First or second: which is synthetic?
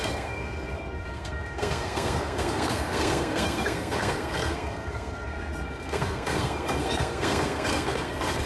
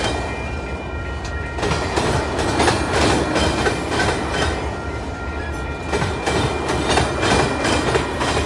first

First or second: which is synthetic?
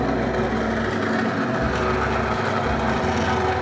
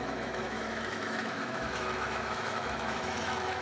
second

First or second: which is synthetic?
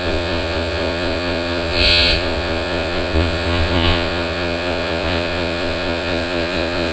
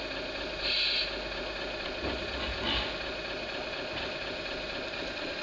first